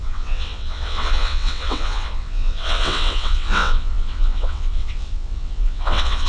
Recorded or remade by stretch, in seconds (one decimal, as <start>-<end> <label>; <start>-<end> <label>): 0.0-6.3 remade